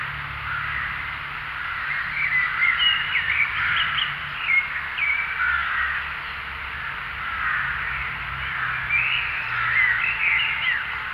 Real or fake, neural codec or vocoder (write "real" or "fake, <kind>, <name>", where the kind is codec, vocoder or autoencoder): real